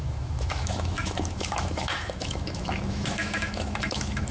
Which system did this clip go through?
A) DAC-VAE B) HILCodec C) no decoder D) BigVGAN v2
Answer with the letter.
A